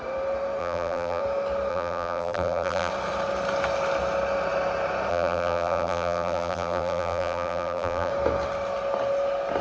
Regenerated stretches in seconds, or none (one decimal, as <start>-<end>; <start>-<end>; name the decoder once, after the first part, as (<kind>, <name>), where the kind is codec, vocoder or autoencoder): 0.6-1.2 (vocoder, BigVGAN v2); 1.7-2.9; 5.1-8.1